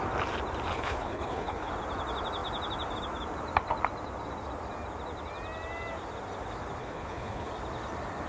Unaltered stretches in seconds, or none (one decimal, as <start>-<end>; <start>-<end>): 0.0-0.7; 1.7-6.8; 7.5-8.3